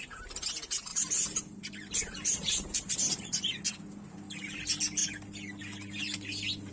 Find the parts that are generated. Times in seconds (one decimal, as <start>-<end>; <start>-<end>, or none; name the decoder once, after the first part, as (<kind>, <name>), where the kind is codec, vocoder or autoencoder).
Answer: 0.9-3.7 (vocoder, BigVGAN v2)